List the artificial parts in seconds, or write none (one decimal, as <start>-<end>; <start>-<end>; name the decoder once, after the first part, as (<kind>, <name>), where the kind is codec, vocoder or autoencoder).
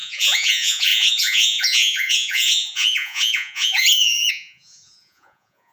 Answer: 0.0-5.7 (vocoder, Vocos)